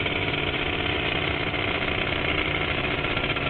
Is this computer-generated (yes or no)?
yes